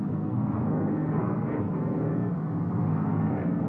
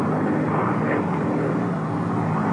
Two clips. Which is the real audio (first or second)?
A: second